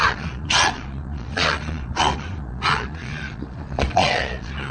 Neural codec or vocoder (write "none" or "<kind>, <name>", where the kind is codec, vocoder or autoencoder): vocoder, Vocos